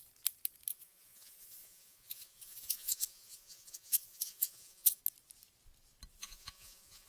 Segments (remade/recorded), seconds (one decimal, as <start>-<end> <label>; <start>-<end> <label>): 0.0-0.7 recorded; 0.7-5.0 remade; 5.0-6.2 recorded; 6.2-7.1 remade